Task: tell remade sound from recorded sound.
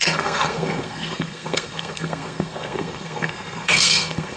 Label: remade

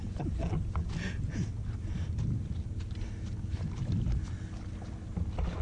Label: recorded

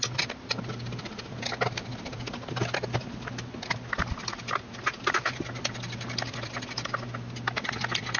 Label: recorded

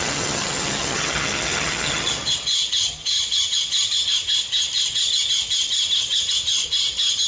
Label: remade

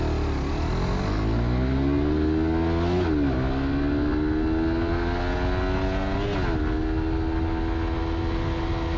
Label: recorded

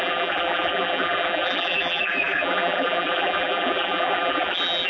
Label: remade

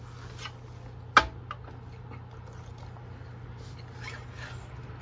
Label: recorded